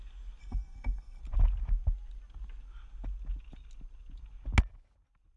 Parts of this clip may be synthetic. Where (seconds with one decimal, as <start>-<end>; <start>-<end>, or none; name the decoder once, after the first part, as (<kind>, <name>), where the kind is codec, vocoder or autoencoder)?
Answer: 0.4-1.2 (codec, SNAC)

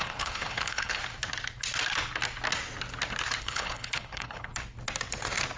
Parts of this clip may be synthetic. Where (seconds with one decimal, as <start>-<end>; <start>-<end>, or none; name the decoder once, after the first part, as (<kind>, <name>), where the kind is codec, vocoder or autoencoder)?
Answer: 0.0-1.0 (codec, HILCodec); 3.4-4.5